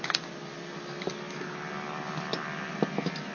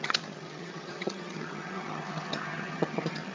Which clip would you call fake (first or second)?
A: second